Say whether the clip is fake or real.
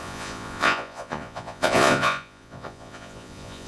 fake